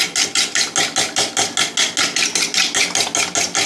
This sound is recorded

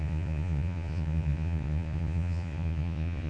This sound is remade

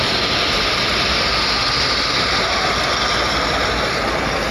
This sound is recorded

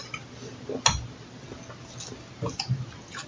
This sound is recorded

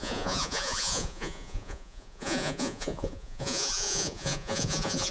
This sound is remade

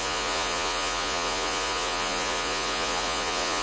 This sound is remade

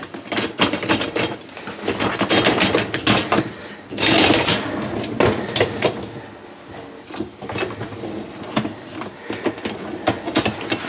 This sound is recorded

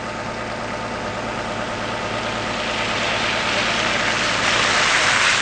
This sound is recorded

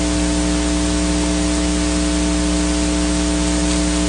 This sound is recorded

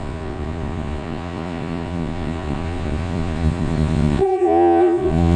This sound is remade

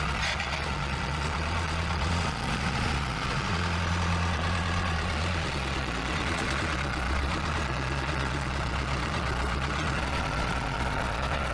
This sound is remade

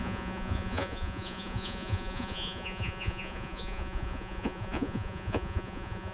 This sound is remade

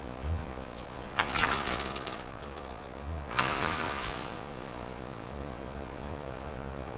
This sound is remade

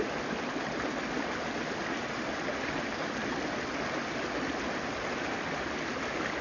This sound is recorded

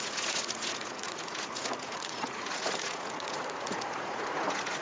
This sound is remade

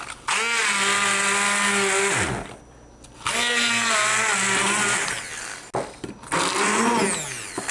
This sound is recorded